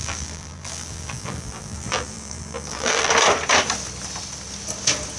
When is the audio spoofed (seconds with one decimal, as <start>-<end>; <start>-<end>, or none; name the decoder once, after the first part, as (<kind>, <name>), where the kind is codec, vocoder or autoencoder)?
0.0-3.1 (vocoder, BigVGAN v2)